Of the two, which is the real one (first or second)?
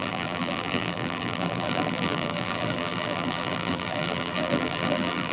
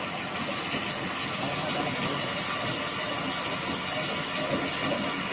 second